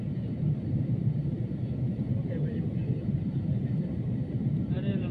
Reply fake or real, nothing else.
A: fake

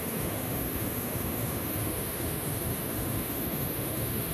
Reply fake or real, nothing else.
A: fake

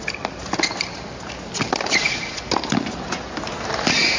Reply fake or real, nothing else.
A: real